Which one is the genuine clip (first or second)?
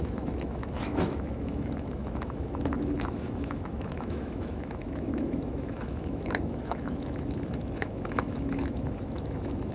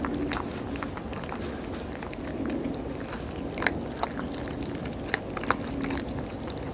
second